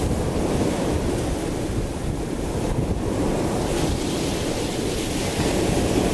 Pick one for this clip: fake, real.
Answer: real